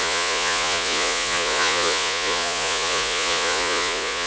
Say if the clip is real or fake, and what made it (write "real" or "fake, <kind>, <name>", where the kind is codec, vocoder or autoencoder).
fake, vocoder, Vocos